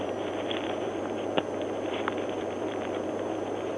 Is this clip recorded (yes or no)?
no